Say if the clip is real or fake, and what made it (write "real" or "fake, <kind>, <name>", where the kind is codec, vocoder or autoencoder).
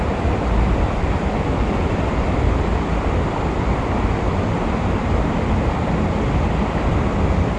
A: real